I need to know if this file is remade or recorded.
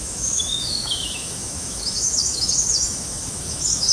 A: remade